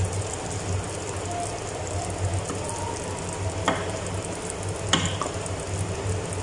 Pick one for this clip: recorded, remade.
recorded